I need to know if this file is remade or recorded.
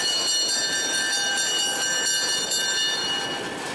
recorded